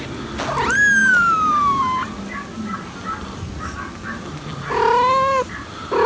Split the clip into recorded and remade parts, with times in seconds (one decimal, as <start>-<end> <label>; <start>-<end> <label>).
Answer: 0.0-6.1 recorded